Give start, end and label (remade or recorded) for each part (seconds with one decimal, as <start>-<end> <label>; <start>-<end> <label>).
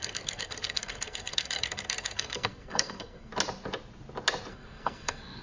0.0-3.3 remade; 3.3-4.5 recorded; 4.5-5.4 remade